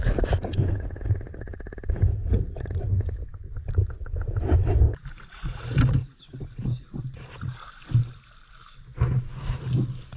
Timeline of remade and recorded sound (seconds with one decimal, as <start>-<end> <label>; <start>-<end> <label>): 0.0-8.0 remade; 8.0-9.6 recorded; 9.6-10.2 remade